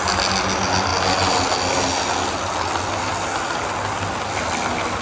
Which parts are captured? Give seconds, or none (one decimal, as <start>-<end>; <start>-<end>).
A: 0.0-5.0

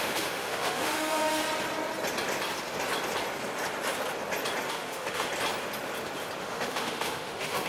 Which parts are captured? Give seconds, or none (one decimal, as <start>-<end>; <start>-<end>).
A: 1.4-4.7; 5.3-6.4

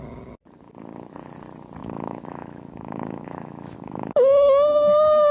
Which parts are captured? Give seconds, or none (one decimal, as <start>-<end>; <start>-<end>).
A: 0.0-1.8

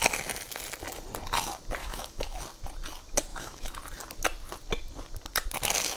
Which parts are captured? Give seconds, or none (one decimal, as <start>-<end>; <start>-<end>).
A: 0.0-1.8; 2.4-3.3; 3.8-6.0

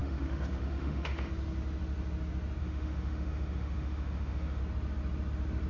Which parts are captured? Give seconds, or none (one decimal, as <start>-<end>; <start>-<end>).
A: 1.3-2.6; 4.6-5.7

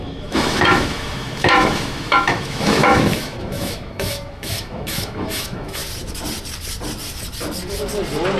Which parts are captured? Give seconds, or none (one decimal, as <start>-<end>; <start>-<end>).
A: 5.8-8.4

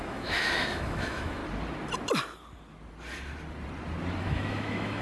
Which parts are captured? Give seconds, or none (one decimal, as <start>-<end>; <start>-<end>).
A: 1.4-4.2

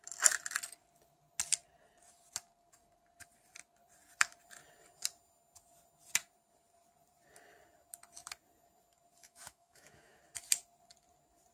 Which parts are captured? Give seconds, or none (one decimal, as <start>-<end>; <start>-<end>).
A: 0.0-9.2; 10.2-11.5